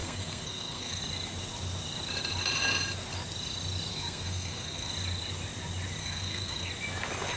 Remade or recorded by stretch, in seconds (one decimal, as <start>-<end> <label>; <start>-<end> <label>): 0.0-1.0 remade; 1.0-3.9 recorded; 3.9-4.9 remade; 4.9-6.0 recorded; 6.0-6.7 remade; 6.7-7.4 recorded